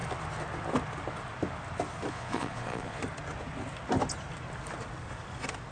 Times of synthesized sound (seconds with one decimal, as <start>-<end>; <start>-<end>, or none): 2.1-3.0